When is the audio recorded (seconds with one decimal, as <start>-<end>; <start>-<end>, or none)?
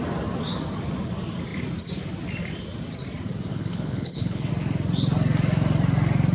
0.0-3.5; 4.5-6.3